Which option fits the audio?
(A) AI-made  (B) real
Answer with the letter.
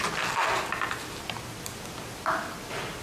B